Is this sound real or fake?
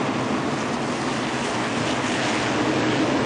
real